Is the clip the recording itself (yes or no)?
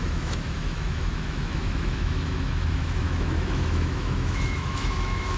no